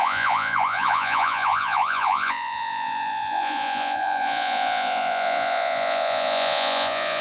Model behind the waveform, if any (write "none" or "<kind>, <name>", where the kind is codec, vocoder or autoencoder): vocoder, Vocos